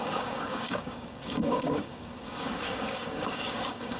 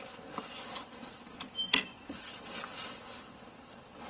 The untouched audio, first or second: second